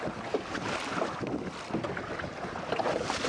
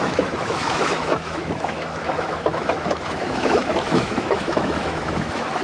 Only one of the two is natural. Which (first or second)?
first